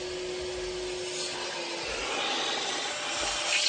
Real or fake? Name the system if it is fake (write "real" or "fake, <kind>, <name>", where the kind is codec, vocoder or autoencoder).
real